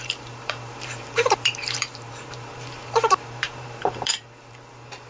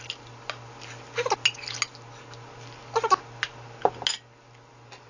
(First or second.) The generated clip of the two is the first